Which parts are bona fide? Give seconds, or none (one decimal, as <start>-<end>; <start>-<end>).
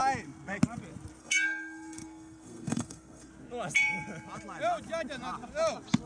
0.0-1.2; 3.3-6.1